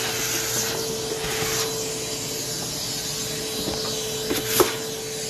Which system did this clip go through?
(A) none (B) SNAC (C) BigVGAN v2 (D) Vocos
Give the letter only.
A